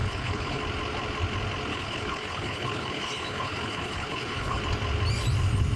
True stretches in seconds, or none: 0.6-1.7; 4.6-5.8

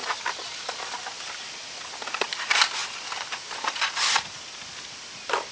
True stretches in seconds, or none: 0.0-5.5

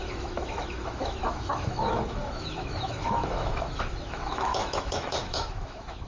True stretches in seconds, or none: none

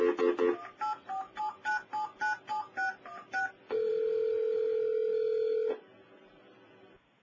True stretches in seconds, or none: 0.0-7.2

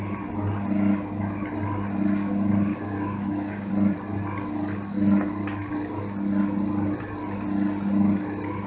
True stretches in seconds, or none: 0.0-2.7; 3.7-8.7